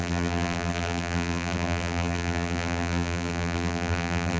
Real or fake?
fake